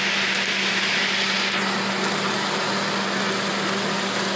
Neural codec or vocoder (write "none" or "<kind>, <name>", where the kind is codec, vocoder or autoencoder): none